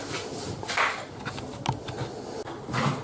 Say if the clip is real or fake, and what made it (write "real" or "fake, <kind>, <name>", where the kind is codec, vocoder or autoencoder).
real